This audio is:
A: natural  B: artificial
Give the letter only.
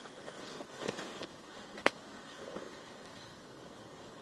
B